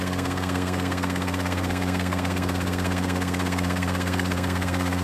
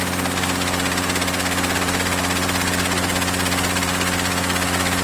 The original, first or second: second